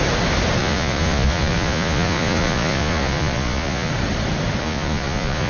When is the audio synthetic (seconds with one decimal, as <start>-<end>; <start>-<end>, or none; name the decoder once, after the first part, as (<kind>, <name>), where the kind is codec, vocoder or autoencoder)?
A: 0.6-3.9 (vocoder, Vocos); 4.6-5.5

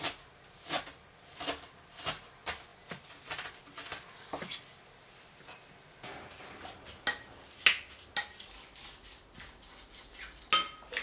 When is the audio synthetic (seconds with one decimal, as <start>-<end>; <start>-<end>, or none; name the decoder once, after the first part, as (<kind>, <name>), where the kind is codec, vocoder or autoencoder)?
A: none